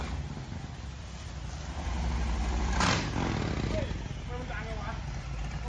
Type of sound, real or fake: real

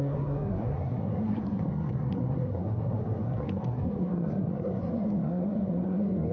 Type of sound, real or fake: fake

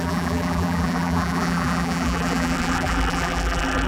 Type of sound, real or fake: fake